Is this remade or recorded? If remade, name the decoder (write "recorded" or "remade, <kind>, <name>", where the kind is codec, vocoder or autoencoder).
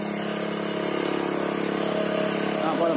recorded